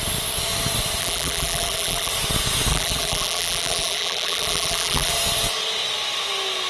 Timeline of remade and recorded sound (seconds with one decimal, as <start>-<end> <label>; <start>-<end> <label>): 0.0-1.0 recorded; 1.0-2.1 remade; 2.1-2.7 recorded; 2.7-5.1 remade; 5.1-6.7 recorded